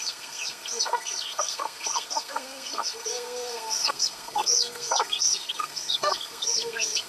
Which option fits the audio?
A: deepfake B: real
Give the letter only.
A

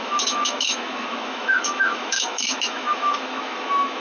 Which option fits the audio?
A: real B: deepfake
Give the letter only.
B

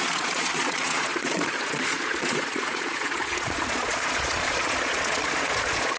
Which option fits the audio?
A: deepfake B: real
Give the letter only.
A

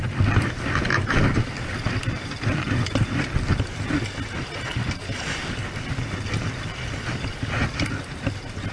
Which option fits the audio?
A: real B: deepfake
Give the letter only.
A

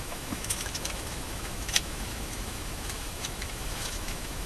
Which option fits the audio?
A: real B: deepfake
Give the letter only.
B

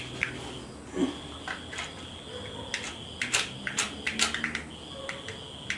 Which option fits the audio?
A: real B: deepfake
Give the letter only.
A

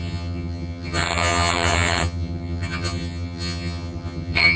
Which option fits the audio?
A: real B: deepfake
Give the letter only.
B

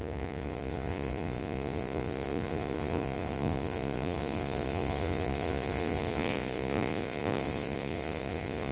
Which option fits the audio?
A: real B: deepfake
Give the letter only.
B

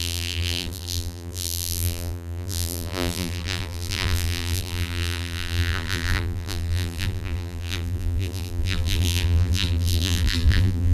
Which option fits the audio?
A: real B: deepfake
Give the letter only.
B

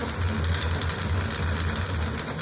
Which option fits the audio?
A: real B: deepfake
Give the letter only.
A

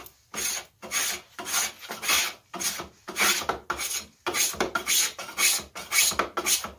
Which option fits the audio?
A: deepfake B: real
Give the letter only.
B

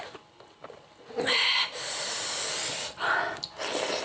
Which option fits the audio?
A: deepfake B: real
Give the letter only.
B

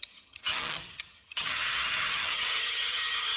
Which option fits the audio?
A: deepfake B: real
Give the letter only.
A